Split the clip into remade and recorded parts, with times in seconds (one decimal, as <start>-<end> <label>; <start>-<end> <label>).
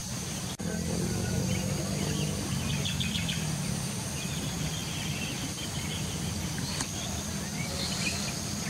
0.0-0.6 remade; 0.6-8.7 recorded